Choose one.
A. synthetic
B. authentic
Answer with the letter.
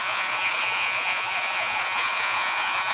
A